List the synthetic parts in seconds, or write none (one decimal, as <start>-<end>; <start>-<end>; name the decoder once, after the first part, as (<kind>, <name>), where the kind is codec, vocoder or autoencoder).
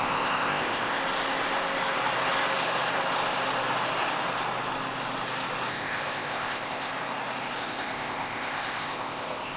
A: 0.0-1.0 (codec, ZipCodec); 5.7-6.9; 7.6-9.6